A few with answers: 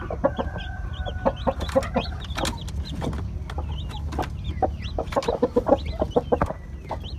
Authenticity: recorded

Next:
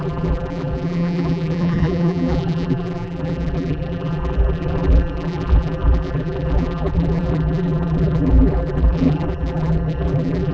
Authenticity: remade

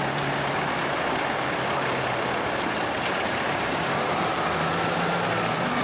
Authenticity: recorded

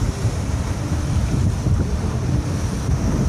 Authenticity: remade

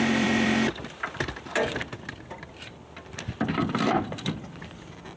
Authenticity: remade